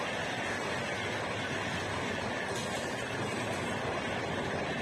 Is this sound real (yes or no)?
yes